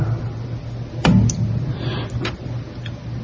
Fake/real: real